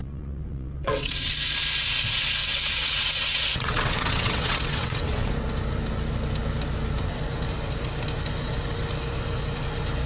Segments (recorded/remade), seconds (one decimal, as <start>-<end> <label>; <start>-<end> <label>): 0.0-1.3 remade; 1.3-2.4 recorded; 2.4-5.3 remade; 5.3-10.1 recorded